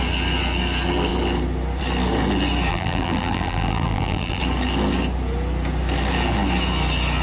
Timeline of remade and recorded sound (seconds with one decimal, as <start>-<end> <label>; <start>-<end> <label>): 0.0-2.7 recorded; 2.7-4.4 remade; 4.4-7.2 recorded